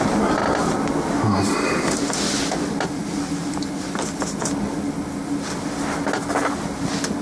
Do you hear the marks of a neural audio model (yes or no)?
no